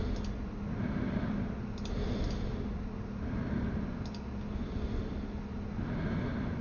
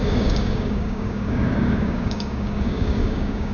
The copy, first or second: second